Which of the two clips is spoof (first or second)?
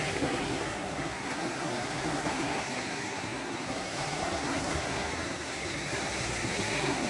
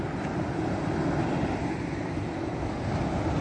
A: first